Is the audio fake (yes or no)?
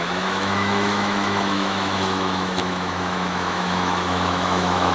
yes